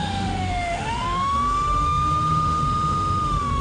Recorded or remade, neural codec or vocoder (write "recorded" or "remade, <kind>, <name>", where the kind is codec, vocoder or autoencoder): remade, autoencoder, DAC-VAE